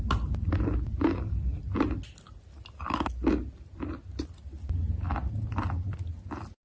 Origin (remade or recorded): recorded